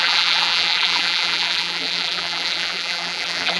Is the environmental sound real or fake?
fake